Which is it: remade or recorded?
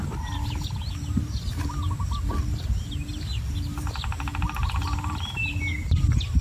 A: recorded